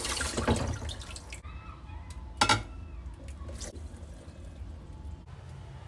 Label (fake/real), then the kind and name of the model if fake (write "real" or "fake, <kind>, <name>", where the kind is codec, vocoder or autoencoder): real